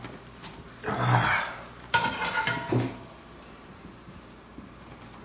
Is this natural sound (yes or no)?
no